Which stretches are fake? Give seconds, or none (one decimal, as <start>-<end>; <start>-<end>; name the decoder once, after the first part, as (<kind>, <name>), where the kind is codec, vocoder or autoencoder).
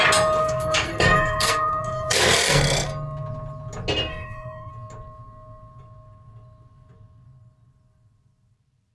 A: 0.4-2.9 (codec, SNAC); 4.1-4.7